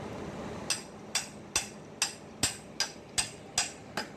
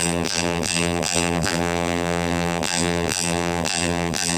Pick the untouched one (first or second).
first